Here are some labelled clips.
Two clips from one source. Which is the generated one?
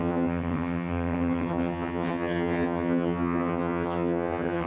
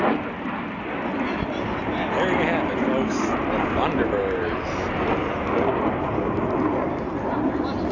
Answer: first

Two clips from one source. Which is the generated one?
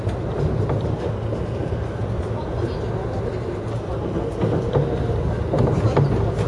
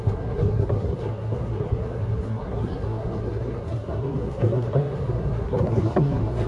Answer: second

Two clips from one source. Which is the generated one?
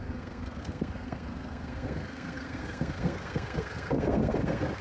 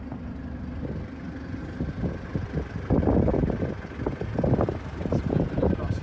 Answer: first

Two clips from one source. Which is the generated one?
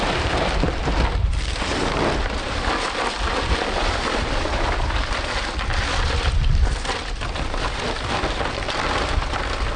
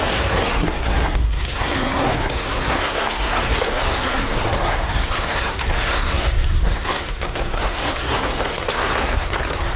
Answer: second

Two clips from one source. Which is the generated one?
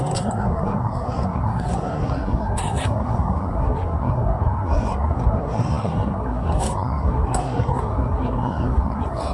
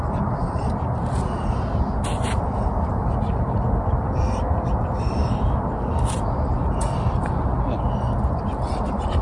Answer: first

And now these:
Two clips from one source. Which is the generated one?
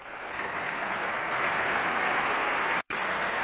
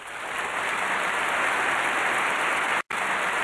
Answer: first